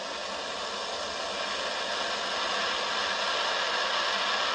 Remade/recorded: recorded